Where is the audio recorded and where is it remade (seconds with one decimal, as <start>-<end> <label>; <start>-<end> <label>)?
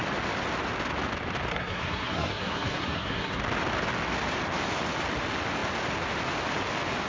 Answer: 0.0-1.5 recorded; 1.5-3.4 remade; 3.4-7.1 recorded